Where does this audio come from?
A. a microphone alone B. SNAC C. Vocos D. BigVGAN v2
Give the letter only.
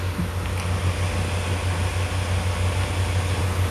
A